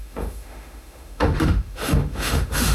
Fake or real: fake